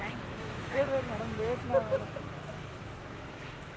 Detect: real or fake fake